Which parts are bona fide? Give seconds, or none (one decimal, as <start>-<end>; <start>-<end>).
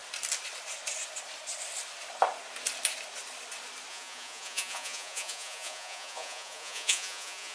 0.0-3.9